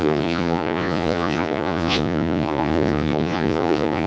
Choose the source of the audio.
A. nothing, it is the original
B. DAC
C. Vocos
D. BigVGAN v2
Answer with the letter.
C